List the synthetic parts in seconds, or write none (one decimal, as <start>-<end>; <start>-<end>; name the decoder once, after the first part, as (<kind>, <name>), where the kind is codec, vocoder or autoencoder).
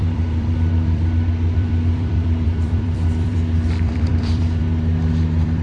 0.0-5.6 (vocoder, BigVGAN v2)